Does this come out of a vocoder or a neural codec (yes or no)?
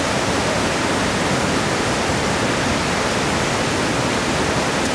no